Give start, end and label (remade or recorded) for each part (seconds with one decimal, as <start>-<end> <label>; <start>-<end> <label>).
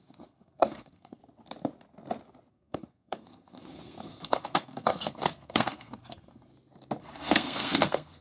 0.0-1.2 remade; 1.2-2.5 recorded; 2.5-6.5 remade; 6.5-7.0 recorded; 7.0-8.2 remade